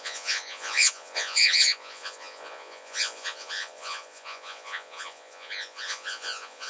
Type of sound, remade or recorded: remade